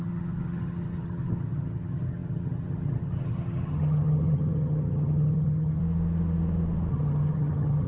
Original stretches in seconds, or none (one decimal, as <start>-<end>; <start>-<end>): 5.8-6.9